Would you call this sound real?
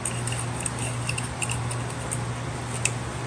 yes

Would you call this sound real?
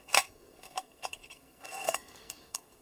no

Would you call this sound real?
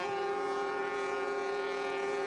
no